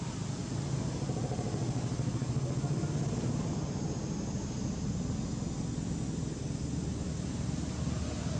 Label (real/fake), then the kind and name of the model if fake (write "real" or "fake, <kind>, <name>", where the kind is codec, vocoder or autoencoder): real